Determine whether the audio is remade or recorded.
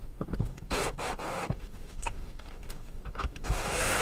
remade